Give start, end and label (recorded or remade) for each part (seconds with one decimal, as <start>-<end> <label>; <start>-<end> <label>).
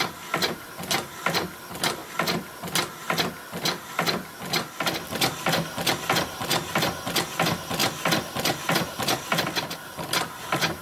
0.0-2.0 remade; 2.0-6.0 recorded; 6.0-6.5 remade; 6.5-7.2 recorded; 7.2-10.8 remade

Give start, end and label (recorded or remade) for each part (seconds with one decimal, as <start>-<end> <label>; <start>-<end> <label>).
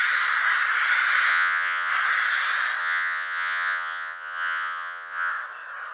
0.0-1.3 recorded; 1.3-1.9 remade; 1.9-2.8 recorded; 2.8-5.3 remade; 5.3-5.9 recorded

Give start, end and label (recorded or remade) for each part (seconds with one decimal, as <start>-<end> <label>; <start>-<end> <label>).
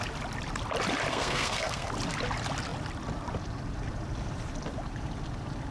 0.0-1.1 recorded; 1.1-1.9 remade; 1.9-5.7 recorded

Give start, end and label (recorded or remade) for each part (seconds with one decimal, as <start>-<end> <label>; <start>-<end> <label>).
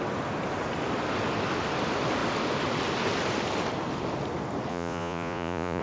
0.0-4.7 recorded; 4.7-5.8 remade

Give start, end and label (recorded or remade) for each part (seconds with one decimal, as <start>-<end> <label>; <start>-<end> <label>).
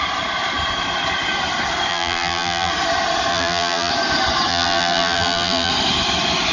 0.0-1.9 recorded; 1.9-2.7 remade; 2.7-3.3 recorded; 3.3-3.9 remade; 3.9-4.5 recorded; 4.5-5.7 remade; 5.7-6.5 recorded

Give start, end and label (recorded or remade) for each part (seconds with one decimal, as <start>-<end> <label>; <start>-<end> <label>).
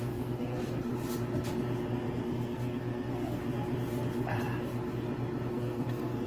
0.0-0.9 remade; 0.9-2.1 recorded; 2.1-3.4 remade; 3.4-5.5 recorded; 5.5-6.3 remade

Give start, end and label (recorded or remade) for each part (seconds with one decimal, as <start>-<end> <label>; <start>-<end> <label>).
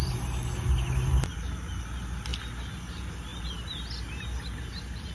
0.0-5.1 recorded